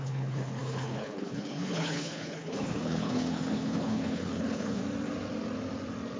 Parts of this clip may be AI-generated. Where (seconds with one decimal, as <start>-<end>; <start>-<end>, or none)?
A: 0.0-4.8

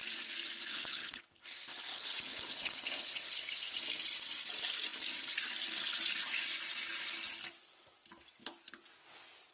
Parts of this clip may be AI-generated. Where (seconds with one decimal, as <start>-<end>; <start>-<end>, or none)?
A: 0.7-1.2; 1.9-3.8

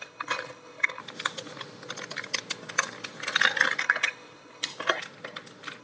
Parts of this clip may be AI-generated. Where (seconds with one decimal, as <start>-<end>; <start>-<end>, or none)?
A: 0.0-1.0; 3.8-4.7

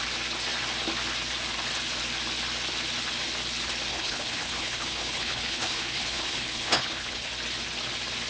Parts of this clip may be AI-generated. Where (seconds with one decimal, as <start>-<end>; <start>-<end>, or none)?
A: 3.9-7.3

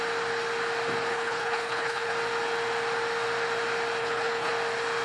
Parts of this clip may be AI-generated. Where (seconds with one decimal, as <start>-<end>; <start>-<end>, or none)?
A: 1.1-2.1; 4.0-4.5